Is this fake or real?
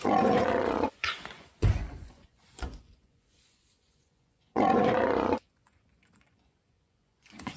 fake